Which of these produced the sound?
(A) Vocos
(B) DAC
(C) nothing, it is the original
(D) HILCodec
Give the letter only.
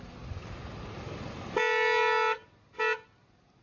C